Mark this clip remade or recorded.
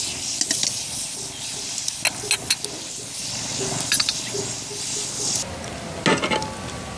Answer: recorded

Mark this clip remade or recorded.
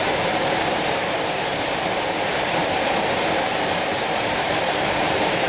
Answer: remade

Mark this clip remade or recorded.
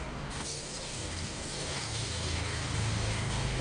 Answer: remade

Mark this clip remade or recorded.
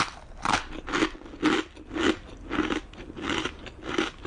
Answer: recorded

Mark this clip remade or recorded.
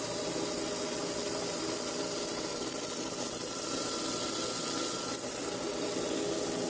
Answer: recorded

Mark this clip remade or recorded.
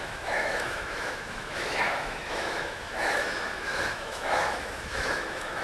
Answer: remade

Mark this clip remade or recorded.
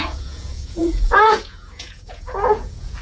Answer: remade